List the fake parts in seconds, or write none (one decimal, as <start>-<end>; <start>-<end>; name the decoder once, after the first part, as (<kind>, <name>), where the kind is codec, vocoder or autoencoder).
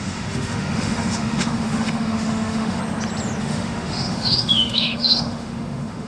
0.0-2.8 (autoencoder, DAC-VAE); 3.4-6.1